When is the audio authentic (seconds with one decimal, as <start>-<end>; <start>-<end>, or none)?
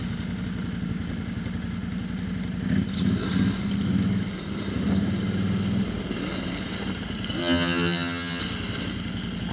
0.0-7.4; 8.4-9.5